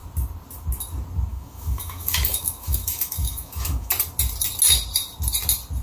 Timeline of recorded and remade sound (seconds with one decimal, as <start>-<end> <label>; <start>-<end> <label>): 0.0-1.3 recorded; 1.3-3.9 remade; 3.9-5.8 recorded